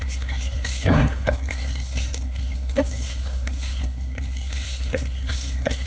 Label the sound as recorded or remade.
remade